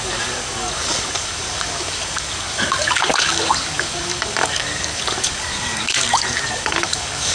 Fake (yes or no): yes